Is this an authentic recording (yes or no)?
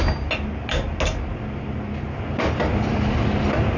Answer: yes